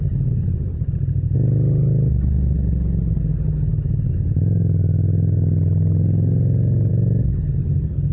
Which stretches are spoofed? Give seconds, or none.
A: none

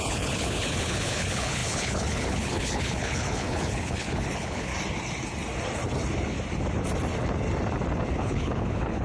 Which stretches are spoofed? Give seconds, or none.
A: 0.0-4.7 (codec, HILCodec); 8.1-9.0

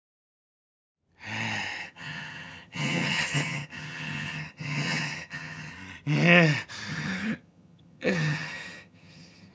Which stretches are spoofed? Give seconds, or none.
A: 1.8-5.7 (vocoder, HiFi-GAN); 6.9-9.5

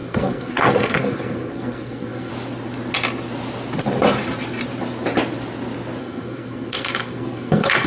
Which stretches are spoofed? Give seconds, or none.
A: 0.0-2.3 (codec, SNAC); 6.0-7.9

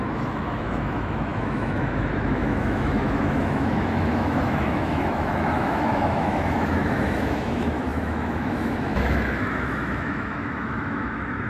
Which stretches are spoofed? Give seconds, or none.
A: 0.0-11.5 (autoencoder, DAC-VAE)